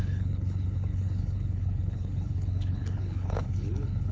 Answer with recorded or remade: remade